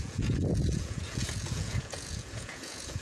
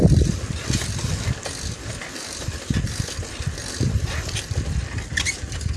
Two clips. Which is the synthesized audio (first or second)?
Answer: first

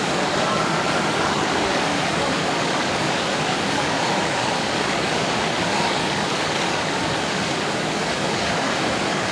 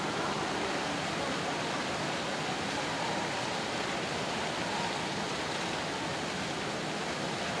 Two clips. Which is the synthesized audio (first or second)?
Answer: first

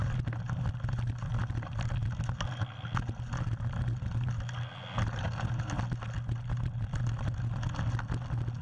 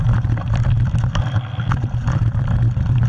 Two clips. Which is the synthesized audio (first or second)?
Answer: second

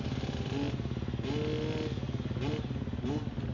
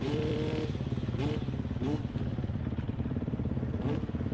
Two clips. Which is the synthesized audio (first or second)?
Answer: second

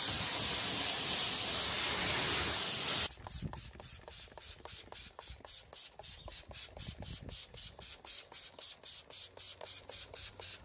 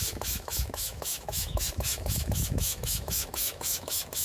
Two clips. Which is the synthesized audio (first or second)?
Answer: second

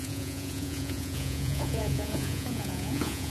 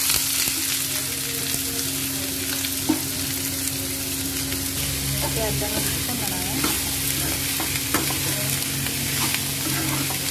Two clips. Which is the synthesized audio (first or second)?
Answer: first